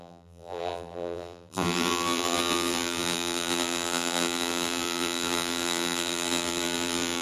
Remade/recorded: remade